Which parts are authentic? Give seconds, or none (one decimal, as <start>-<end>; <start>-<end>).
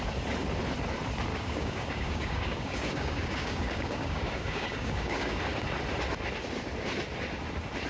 0.0-1.3; 5.4-7.9